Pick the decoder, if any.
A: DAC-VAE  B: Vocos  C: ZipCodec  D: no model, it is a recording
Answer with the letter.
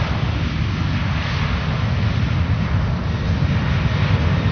D